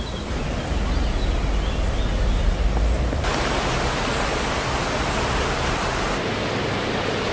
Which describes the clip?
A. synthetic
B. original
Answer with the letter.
B